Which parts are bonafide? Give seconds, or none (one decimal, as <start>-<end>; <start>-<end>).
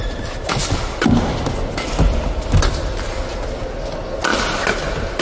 0.0-5.2